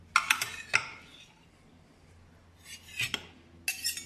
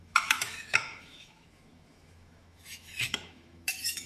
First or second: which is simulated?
second